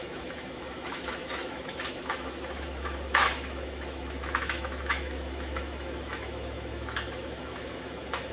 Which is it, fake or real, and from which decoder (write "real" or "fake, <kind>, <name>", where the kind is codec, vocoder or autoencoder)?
fake, autoencoder, DAC-VAE